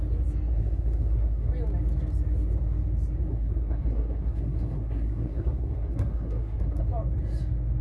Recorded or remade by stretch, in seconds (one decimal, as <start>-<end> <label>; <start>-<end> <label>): 0.0-0.5 recorded; 0.5-1.5 remade; 1.5-3.3 recorded; 3.3-6.8 remade; 6.8-7.8 recorded